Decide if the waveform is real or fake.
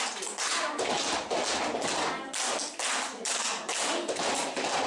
real